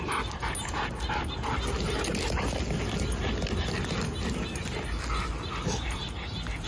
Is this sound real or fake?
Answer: real